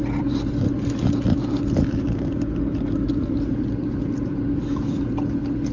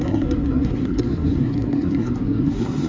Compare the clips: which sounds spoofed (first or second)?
second